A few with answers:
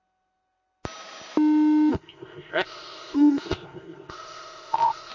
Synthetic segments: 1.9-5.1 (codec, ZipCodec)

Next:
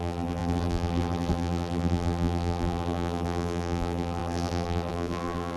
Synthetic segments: 0.0-5.6 (vocoder, BigVGAN v2)

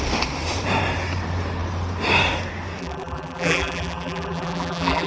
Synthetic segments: 2.8-5.1 (vocoder, BigVGAN v2)

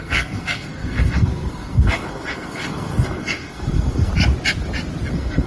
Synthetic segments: 0.0-4.1 (codec, SNAC); 5.1-5.5

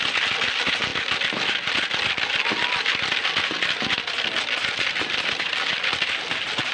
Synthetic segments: none

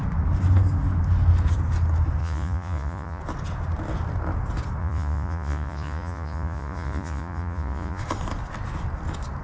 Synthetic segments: 2.2-3.2 (vocoder, Vocos); 4.8-8.0